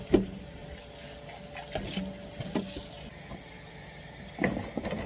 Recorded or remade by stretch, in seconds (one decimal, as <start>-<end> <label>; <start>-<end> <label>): 0.0-5.1 recorded